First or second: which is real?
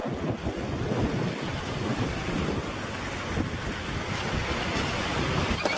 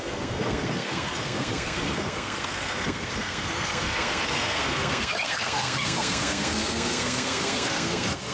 first